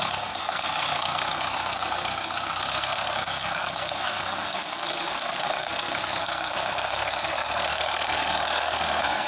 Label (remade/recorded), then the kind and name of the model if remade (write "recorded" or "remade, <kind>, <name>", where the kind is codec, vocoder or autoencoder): remade, codec, SNAC